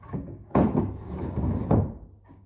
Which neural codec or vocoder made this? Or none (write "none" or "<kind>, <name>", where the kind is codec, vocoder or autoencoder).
codec, DAC